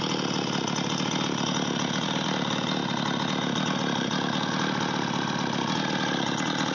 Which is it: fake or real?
real